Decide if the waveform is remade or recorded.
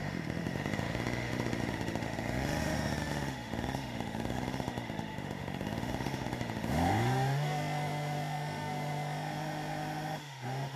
remade